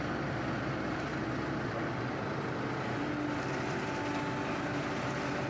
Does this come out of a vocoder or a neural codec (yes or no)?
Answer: no